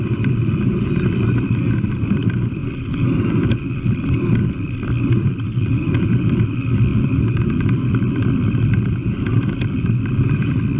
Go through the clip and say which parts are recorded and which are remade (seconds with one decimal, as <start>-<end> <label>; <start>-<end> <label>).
0.0-2.6 remade; 2.6-3.5 recorded; 3.5-10.8 remade